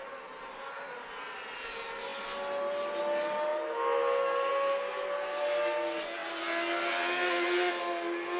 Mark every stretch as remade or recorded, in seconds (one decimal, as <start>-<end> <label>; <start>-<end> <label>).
0.0-8.4 recorded